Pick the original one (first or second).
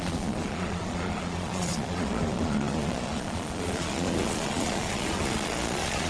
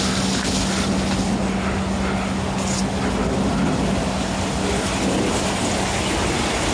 second